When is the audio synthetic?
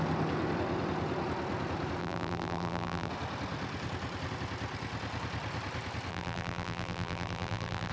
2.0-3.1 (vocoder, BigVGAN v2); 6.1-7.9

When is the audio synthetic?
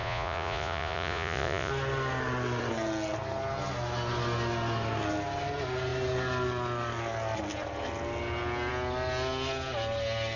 0.0-1.7 (vocoder, Vocos)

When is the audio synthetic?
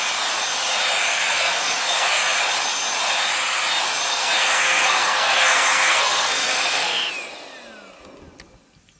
1.1-2.2 (codec, SNAC); 4.1-7.1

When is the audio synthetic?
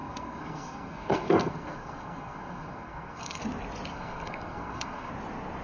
0.0-3.4 (codec, SNAC); 3.9-5.1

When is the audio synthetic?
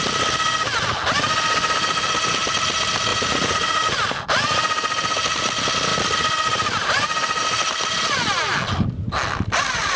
3.1-3.8 (vocoder, Vocos)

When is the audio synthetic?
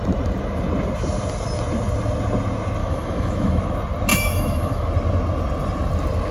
2.8-3.6 (autoencoder, DAC-VAE); 4.1-4.9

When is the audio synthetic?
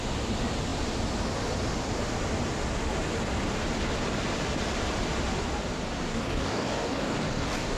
6.1-7.8 (codec, DAC)